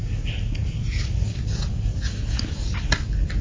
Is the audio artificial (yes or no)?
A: no